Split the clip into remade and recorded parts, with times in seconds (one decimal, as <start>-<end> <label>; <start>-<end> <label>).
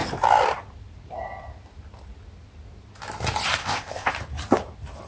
0.0-3.6 recorded; 3.6-4.1 remade; 4.1-5.1 recorded